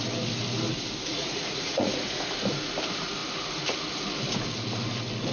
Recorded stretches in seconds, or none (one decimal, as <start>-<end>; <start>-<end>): 0.0-1.0; 2.3-5.3